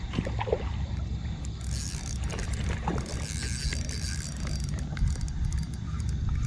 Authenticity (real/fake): real